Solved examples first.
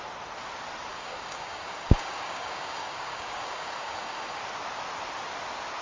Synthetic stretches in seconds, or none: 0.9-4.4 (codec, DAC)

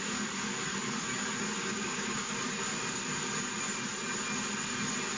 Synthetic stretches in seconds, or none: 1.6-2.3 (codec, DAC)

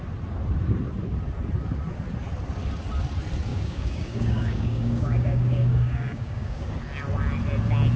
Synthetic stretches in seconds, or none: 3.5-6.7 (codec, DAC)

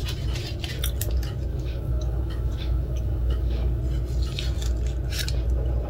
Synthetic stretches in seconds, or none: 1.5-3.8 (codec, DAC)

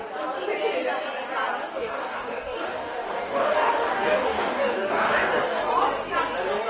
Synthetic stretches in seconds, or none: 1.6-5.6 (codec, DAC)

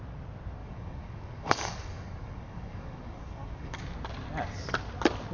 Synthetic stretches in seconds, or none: 0.6-3.8 (codec, DAC)